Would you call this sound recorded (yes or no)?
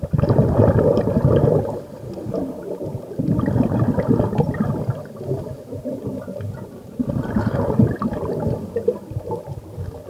yes